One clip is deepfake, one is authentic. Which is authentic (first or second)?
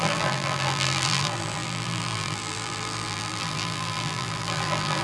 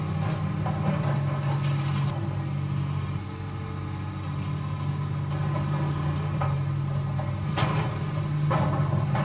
second